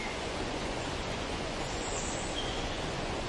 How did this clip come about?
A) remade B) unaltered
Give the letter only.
A